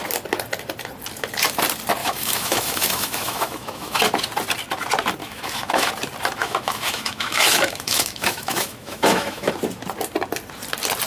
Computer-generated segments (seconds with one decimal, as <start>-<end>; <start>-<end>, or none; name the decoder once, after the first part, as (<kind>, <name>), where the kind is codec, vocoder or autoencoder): 2.0-4.0 (autoencoder, DAC-VAE); 5.2-5.9; 6.4-9.5